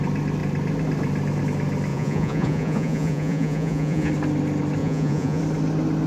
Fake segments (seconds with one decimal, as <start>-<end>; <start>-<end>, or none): 1.9-4.1; 4.8-5.4